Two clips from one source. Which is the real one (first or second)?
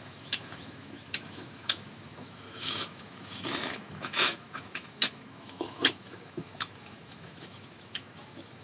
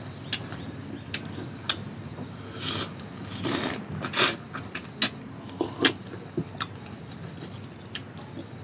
second